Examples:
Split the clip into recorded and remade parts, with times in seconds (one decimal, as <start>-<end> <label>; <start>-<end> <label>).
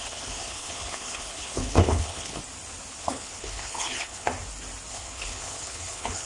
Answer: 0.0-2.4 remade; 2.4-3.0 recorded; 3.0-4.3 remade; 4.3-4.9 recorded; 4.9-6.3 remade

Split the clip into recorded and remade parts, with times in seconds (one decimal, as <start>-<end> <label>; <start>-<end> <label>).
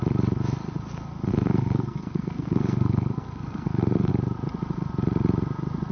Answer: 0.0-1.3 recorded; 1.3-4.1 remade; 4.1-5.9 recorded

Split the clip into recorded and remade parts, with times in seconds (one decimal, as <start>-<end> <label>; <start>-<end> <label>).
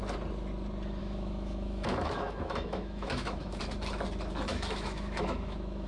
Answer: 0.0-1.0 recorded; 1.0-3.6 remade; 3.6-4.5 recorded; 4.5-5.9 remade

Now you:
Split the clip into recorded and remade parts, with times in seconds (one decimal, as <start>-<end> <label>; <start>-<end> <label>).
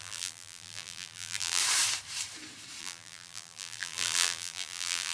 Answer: 0.0-1.6 remade; 1.6-2.8 recorded; 2.8-5.1 remade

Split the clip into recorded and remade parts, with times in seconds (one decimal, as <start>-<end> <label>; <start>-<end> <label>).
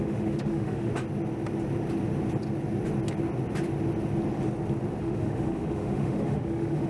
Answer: 0.0-0.9 remade; 0.9-5.0 recorded; 5.0-6.9 remade